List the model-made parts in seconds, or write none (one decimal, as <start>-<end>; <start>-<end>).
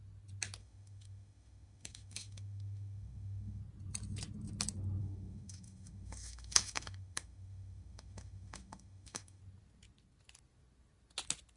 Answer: 0.6-3.6; 5.0-9.4